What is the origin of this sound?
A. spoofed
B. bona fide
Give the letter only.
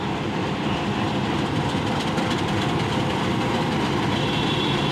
A